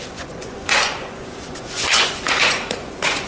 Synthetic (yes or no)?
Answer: yes